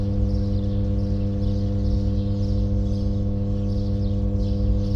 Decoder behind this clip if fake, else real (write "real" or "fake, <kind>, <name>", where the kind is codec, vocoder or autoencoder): real